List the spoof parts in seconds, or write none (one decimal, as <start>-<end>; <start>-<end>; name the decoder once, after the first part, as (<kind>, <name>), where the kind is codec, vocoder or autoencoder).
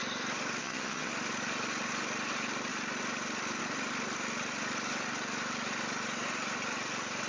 0.6-1.1 (vocoder, HiFi-GAN)